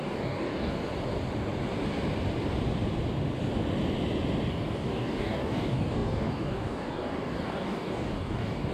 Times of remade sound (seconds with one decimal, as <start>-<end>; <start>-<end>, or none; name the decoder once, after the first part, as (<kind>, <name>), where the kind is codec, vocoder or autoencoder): 0.0-0.7 (codec, DAC); 4.5-8.7